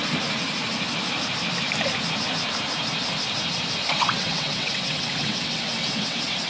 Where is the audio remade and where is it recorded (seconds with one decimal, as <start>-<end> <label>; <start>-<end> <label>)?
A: 0.0-3.9 recorded; 3.9-6.5 remade